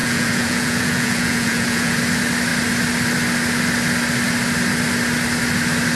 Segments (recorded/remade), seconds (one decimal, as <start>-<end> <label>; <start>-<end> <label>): 0.0-2.0 remade; 2.0-6.0 recorded